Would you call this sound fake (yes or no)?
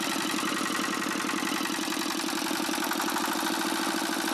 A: no